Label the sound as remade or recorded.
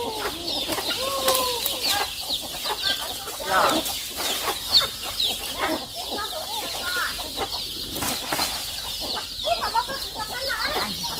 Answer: recorded